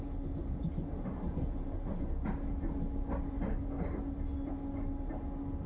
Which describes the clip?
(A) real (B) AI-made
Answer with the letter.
A